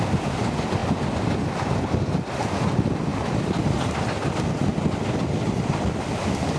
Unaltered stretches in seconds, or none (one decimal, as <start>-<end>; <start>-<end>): 0.0-6.6